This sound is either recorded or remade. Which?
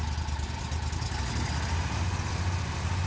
recorded